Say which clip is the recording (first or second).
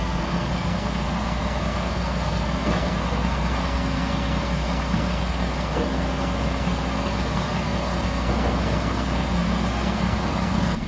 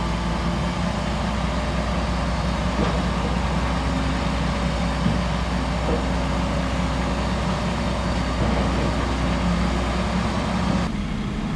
second